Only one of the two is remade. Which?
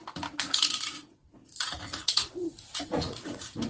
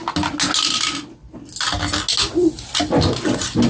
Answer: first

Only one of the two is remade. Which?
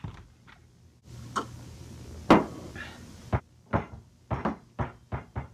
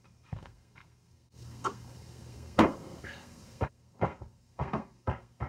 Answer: second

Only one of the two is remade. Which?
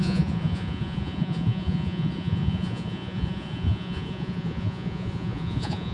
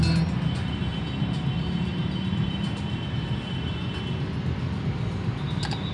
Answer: first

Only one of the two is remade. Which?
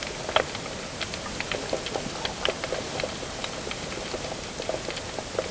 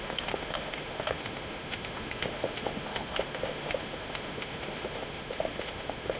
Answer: second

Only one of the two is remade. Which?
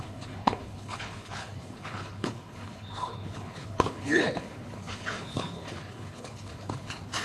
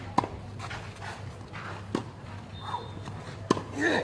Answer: first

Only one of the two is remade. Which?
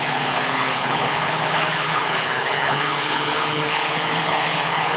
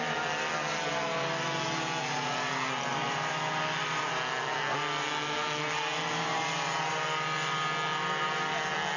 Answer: first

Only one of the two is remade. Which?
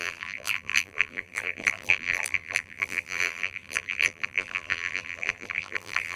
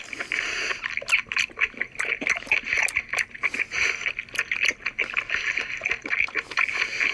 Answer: first